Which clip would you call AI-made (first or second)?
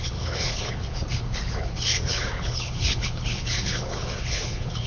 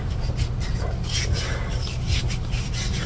first